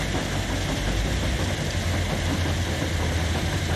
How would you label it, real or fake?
real